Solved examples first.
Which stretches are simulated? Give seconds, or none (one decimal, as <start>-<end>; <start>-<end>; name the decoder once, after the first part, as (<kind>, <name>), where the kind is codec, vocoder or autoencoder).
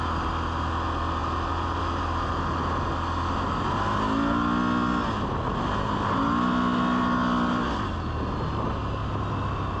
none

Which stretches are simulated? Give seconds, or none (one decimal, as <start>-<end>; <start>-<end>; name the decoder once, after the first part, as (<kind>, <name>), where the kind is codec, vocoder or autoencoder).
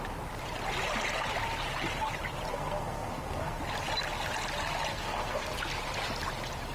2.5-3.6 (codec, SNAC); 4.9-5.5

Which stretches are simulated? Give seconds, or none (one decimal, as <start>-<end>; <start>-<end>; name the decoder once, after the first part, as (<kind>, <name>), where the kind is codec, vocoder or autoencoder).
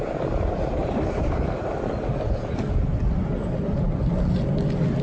0.8-1.9 (vocoder, BigVGAN v2)